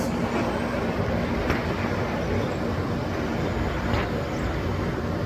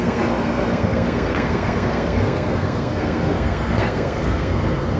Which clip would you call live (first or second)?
first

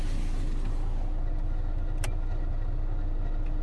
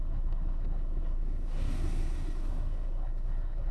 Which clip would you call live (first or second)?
first